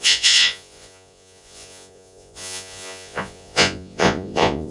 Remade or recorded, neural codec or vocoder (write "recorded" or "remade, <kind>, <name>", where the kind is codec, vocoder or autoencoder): remade, vocoder, Vocos